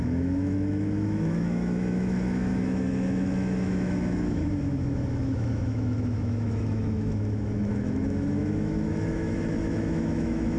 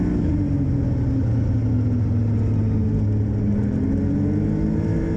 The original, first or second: second